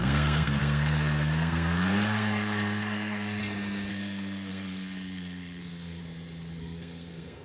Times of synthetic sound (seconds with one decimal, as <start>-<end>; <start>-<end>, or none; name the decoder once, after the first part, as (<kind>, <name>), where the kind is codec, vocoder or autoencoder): 0.0-3.4 (codec, SNAC); 3.9-6.0; 6.6-7.4